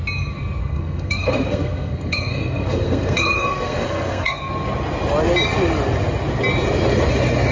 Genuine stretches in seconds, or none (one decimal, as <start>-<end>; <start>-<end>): 0.0-0.6; 4.4-7.5